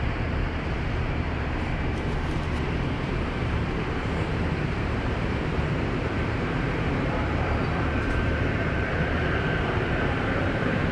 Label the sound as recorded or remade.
remade